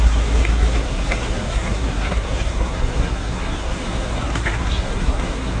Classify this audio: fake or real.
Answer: fake